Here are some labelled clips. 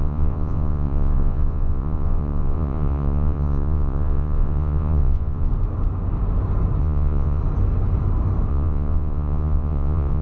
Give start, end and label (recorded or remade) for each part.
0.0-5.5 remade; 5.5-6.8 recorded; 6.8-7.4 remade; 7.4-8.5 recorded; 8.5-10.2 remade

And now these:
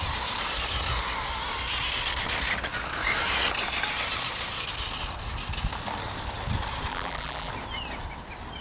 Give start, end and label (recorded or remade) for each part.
0.0-6.9 recorded; 6.9-7.5 remade; 7.5-8.6 recorded

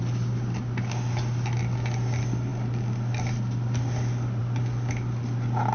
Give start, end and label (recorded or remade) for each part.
0.0-5.7 recorded

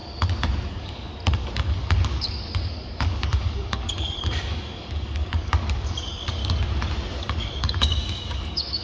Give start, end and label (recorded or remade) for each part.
0.0-0.7 recorded; 0.7-1.1 remade; 1.1-1.6 recorded; 1.6-6.4 remade; 6.4-7.2 recorded; 7.2-8.8 remade

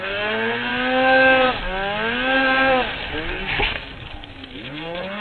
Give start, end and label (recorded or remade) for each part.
0.0-0.7 remade; 0.7-3.3 recorded; 3.3-5.2 remade

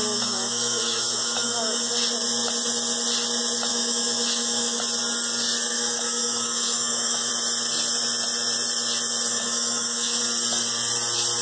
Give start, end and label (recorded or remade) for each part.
0.0-1.9 remade; 1.9-3.7 recorded; 3.7-4.8 remade; 4.8-5.7 recorded; 5.7-7.3 remade; 7.3-9.3 recorded; 9.3-10.2 remade; 10.2-11.4 recorded